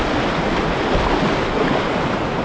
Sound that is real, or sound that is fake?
real